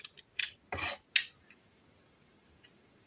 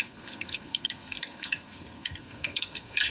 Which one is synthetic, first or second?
second